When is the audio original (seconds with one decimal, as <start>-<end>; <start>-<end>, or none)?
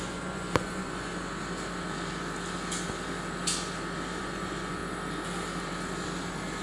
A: 1.1-4.2; 4.8-6.6